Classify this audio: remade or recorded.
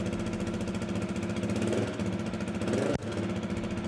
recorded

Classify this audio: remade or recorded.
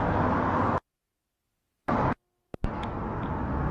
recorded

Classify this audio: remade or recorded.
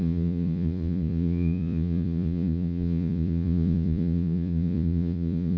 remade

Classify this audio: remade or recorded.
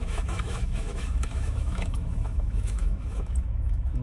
remade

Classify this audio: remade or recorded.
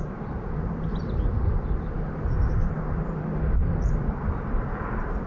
recorded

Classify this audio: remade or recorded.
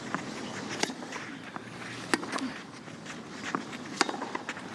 recorded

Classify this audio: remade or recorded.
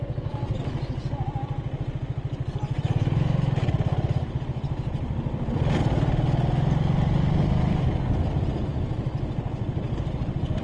recorded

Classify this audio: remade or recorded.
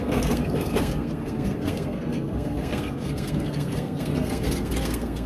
remade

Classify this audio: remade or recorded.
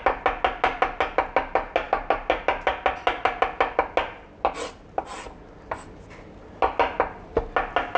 recorded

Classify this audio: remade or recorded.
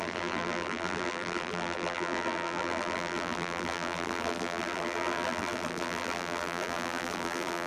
remade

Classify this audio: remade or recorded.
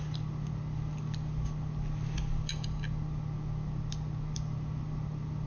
recorded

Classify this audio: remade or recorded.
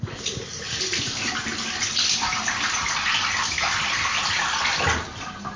recorded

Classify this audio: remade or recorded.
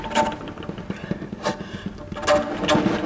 recorded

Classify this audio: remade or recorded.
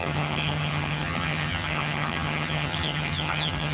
remade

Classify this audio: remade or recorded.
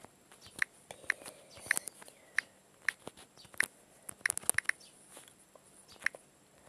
recorded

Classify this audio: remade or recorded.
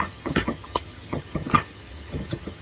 remade